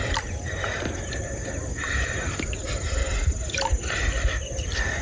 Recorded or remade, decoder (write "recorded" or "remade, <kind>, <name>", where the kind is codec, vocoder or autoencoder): remade, vocoder, BigVGAN v2